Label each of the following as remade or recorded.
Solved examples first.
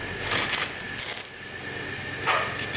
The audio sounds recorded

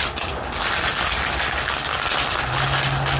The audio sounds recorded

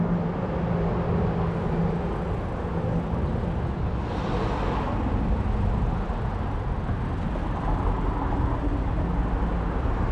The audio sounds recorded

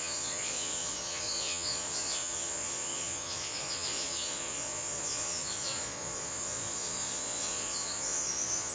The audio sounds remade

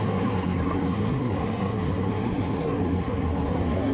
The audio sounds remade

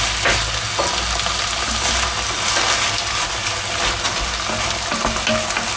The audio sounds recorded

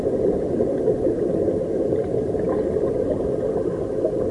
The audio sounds recorded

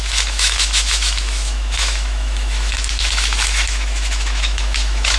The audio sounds remade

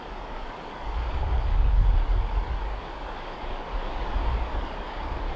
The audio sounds remade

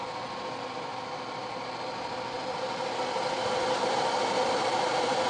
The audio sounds recorded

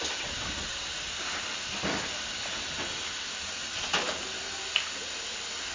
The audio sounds recorded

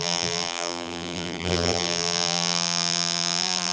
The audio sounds remade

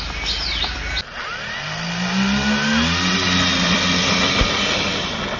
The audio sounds recorded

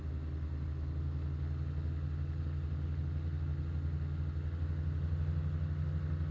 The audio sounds recorded